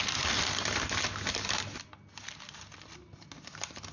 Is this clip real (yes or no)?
yes